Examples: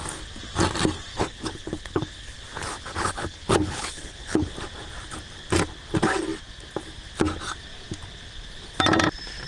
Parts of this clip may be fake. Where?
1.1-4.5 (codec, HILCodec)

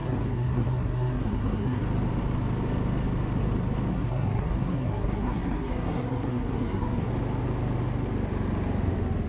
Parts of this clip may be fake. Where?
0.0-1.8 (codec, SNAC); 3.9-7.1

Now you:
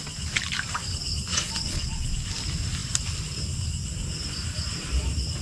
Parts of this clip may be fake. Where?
1.3-2.1 (vocoder, Vocos)